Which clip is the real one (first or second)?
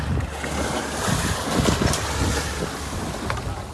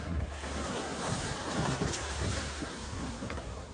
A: first